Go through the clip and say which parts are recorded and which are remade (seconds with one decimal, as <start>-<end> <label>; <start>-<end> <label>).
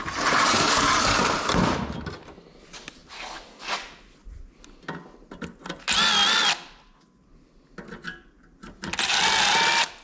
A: 0.0-10.0 recorded